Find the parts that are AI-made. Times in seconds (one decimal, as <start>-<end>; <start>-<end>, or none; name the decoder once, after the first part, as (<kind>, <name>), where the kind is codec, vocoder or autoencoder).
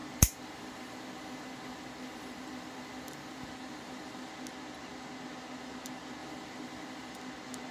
0.0-4.3 (vocoder, BigVGAN v2); 6.2-7.1